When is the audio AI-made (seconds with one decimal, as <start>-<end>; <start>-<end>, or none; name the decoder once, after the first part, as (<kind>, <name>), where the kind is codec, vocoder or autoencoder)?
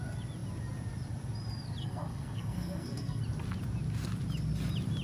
1.8-3.2 (codec, SNAC)